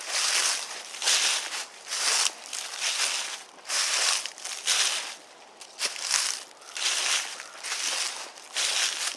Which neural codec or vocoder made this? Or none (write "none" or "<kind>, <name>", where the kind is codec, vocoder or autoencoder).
none